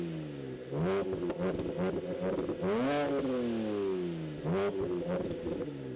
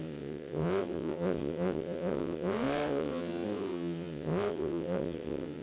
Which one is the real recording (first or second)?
first